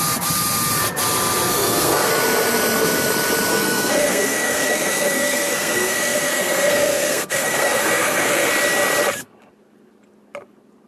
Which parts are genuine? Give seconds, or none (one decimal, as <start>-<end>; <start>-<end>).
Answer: 0.0-1.5; 2.1-3.5; 8.5-10.9